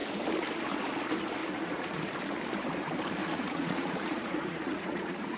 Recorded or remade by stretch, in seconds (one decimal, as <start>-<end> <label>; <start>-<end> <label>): 0.0-1.4 recorded; 1.4-2.0 remade; 2.0-3.2 recorded; 3.2-5.4 remade